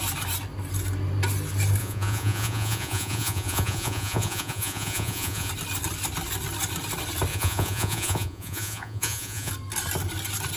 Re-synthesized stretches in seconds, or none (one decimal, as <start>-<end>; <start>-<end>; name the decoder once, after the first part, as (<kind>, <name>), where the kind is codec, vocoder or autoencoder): 1.8-5.5 (vocoder, Vocos); 7.3-9.5